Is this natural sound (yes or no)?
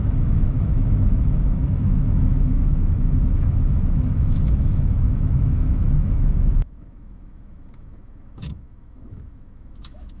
no